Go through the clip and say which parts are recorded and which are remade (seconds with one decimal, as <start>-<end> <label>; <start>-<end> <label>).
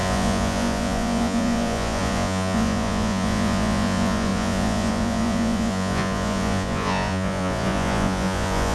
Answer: 0.0-8.7 remade